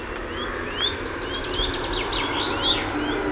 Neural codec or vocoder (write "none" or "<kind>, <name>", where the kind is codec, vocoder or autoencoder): none